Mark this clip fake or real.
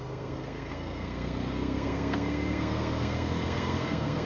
fake